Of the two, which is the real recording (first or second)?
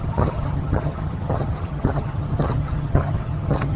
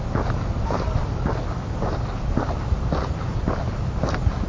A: second